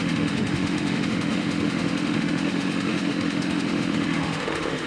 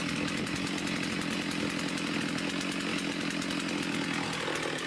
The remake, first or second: first